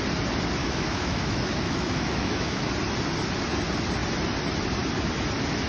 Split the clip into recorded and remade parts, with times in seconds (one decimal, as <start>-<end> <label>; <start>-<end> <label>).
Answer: 0.0-0.6 recorded; 0.6-2.7 remade; 2.7-5.7 recorded

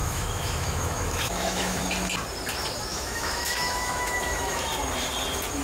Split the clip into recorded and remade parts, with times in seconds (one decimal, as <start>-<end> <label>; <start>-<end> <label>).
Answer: 0.0-1.8 remade; 1.8-2.9 recorded; 2.9-4.7 remade; 4.7-5.6 recorded

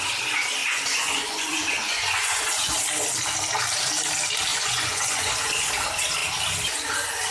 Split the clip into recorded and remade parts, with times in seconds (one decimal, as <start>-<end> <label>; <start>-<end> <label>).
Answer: 0.0-0.6 recorded; 0.6-2.8 remade; 2.8-4.5 recorded; 4.5-5.7 remade; 5.7-7.3 recorded

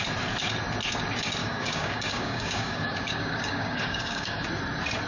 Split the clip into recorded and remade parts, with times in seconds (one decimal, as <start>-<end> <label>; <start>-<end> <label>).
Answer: 0.0-1.4 recorded; 1.4-4.5 remade; 4.5-5.1 recorded

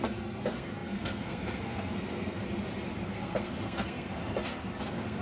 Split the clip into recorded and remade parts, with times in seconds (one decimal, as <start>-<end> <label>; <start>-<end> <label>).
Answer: 0.0-2.4 remade; 2.4-3.0 recorded; 3.0-4.1 remade; 4.1-4.8 recorded; 4.8-5.2 remade

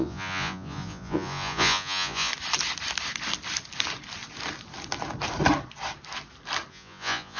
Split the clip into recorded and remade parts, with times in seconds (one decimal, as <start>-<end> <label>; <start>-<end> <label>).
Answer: 0.0-2.3 remade; 2.3-6.7 recorded; 6.7-7.4 remade

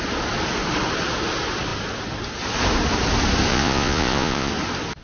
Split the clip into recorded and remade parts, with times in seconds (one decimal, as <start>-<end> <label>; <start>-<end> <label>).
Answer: 0.0-3.5 recorded; 3.5-4.5 remade; 4.5-5.0 recorded

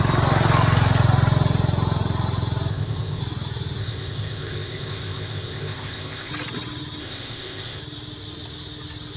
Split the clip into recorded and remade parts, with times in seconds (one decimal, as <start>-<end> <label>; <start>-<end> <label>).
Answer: 0.0-2.7 recorded; 2.7-3.2 remade; 3.2-3.8 recorded; 3.8-6.3 remade; 6.3-7.0 recorded; 7.0-7.8 remade; 7.8-9.2 recorded